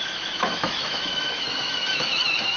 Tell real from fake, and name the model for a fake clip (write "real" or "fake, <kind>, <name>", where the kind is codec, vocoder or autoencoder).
fake, autoencoder, DAC-VAE